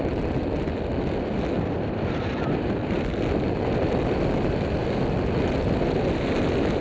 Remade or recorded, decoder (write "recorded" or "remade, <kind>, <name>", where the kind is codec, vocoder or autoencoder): recorded